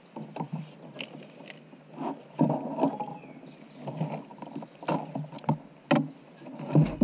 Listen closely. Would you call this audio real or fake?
real